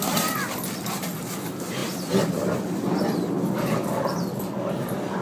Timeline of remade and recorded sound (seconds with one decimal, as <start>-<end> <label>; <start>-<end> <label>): 0.0-5.2 recorded

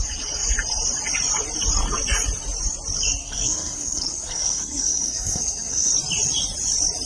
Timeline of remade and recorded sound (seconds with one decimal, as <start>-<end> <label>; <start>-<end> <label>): 0.0-3.2 recorded; 3.2-5.9 remade; 5.9-7.1 recorded

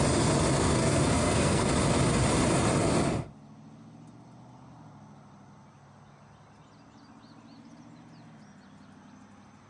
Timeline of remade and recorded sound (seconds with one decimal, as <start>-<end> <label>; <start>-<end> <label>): 0.0-0.6 recorded; 0.6-1.7 remade; 1.7-9.7 recorded

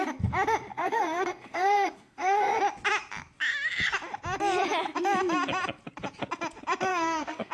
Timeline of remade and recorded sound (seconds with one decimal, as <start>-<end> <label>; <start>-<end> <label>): 0.0-0.7 recorded; 0.7-2.6 remade; 2.6-6.9 recorded; 6.9-7.5 remade

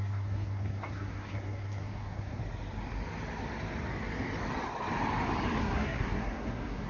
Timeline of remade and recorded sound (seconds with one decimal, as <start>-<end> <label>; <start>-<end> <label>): 0.0-2.4 remade; 2.4-5.6 recorded; 5.6-6.9 remade

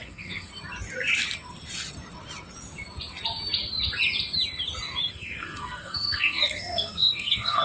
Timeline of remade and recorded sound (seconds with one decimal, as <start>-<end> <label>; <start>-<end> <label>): 0.0-0.5 remade; 0.5-5.1 recorded; 5.1-7.6 remade